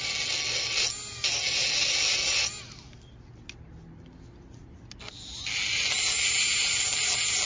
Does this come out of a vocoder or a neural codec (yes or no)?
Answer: no